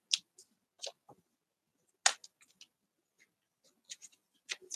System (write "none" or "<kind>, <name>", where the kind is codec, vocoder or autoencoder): none